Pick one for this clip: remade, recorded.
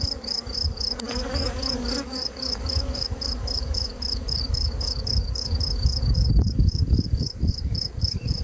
remade